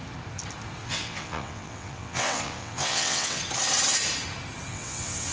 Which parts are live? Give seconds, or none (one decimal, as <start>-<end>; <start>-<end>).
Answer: 0.0-0.8; 3.4-4.7